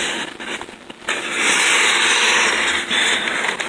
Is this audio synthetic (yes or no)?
no